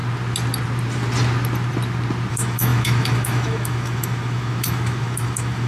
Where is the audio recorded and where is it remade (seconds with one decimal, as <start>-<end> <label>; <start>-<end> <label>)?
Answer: 0.0-2.3 recorded; 2.3-5.7 remade